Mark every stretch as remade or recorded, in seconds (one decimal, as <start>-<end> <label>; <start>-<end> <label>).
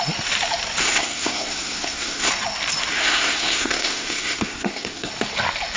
0.0-0.8 recorded; 0.8-2.3 remade; 2.3-2.9 recorded; 2.9-5.1 remade; 5.1-5.8 recorded